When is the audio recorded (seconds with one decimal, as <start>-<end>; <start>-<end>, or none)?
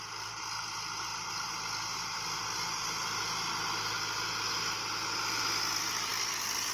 0.0-6.1